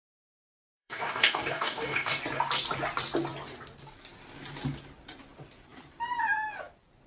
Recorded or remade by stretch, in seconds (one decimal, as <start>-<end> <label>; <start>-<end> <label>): 0.0-2.2 remade; 2.2-7.1 recorded